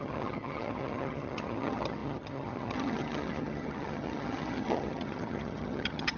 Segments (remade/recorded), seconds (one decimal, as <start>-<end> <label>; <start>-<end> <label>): 0.0-6.2 remade